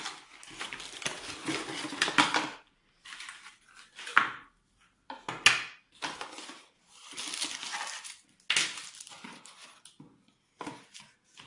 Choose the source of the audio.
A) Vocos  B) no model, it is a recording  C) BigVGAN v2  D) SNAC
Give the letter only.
B